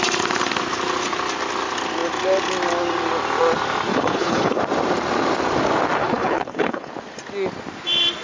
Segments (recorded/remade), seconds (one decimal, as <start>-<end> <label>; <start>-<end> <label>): 0.0-3.9 recorded; 3.9-4.6 remade; 4.6-6.0 recorded; 6.0-6.9 remade; 6.9-8.2 recorded